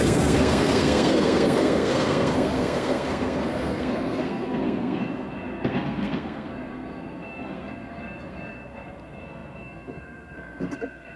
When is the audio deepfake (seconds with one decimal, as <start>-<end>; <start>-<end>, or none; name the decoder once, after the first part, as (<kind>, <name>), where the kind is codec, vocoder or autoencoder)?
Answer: 0.0-11.2 (codec, SNAC)